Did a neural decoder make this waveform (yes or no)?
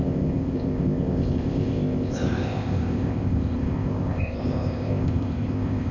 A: yes